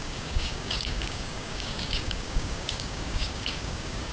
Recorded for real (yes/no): no